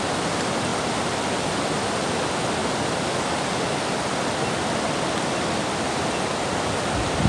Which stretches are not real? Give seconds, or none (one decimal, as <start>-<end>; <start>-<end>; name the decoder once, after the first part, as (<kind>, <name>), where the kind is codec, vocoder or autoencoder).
none